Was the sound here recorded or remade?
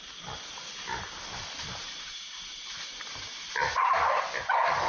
recorded